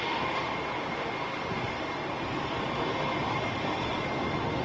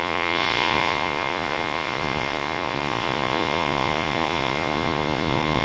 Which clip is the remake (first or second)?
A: second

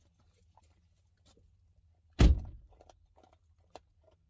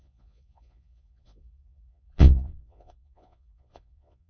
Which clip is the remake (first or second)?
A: second